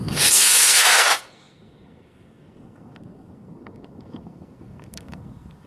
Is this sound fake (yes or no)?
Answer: yes